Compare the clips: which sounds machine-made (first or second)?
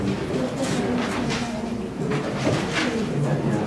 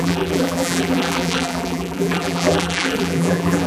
second